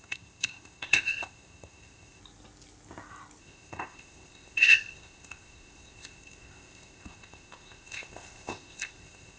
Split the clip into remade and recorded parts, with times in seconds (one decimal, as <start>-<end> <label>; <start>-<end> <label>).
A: 0.0-2.2 remade; 2.2-3.4 recorded; 3.4-9.4 remade